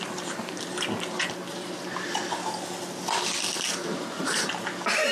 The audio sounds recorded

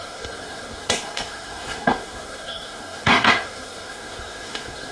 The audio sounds remade